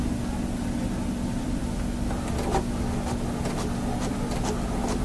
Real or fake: real